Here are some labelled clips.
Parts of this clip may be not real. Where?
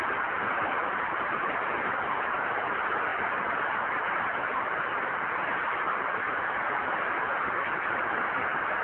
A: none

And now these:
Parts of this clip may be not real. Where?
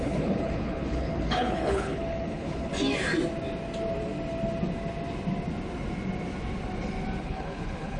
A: 0.0-2.7 (codec, HILCodec); 7.2-8.0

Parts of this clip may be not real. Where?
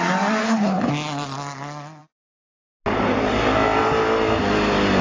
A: 0.4-0.9 (codec, HILCodec)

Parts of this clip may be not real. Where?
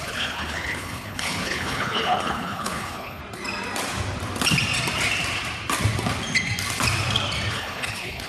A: 0.0-3.2 (codec, HILCodec); 7.5-8.3